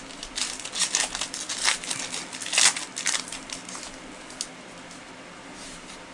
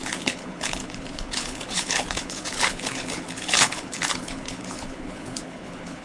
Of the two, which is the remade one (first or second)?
second